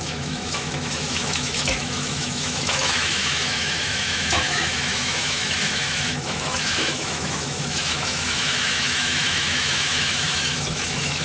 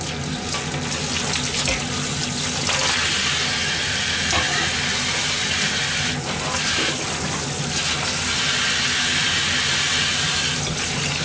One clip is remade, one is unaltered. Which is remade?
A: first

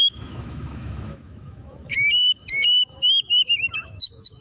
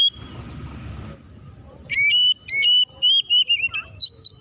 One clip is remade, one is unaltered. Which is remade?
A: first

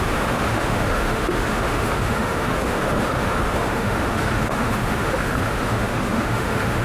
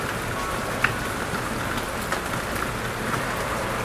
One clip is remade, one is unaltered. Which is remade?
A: first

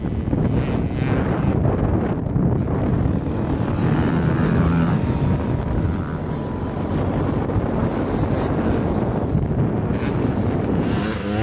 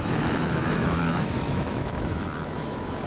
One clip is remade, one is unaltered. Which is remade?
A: second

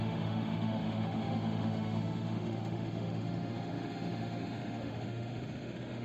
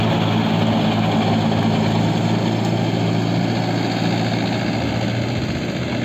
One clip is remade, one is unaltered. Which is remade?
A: first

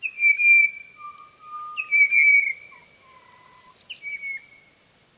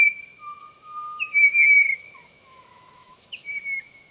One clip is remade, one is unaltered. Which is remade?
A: second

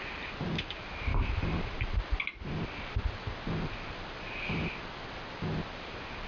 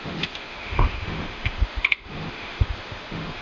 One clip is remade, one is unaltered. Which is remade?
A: second